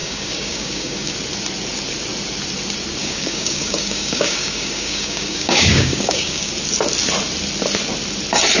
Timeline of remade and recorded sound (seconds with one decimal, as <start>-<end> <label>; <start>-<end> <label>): 0.0-1.1 remade; 1.1-3.0 recorded; 3.0-6.5 remade; 6.5-8.6 recorded